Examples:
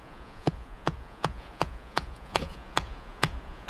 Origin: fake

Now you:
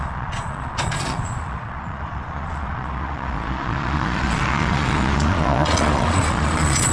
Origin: fake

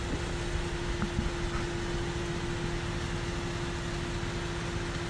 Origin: real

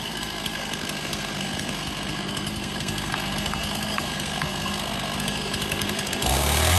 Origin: fake